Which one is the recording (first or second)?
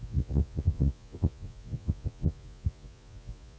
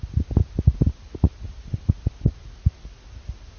second